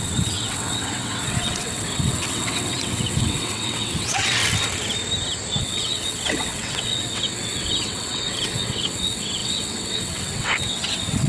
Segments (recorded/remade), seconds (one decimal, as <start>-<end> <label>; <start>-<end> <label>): 0.0-4.4 remade; 4.4-5.6 recorded; 5.6-11.3 remade